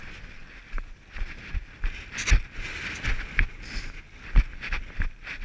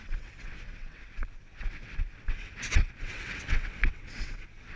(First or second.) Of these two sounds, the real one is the first